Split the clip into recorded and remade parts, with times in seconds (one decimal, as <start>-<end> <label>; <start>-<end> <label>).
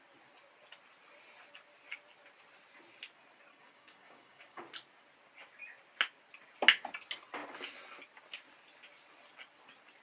0.0-3.5 recorded; 3.5-4.6 remade; 4.6-10.0 recorded